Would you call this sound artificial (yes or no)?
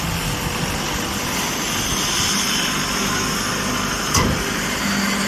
no